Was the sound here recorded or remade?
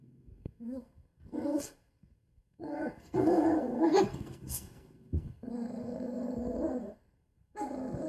remade